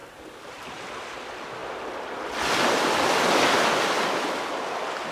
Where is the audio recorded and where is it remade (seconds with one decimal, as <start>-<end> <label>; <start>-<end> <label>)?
0.0-0.8 remade; 0.8-5.1 recorded